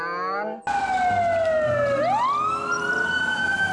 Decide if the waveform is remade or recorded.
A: recorded